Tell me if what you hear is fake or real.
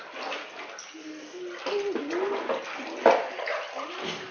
real